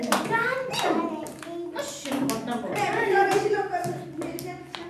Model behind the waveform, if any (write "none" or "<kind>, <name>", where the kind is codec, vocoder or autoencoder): none